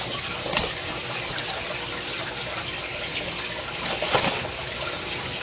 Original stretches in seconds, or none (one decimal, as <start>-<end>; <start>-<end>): 0.0-5.4